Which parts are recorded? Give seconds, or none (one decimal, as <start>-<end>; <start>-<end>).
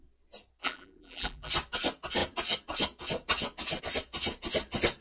0.0-0.6; 1.5-5.0